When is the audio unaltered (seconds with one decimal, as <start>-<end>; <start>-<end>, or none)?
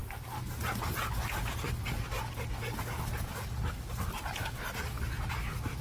0.6-5.8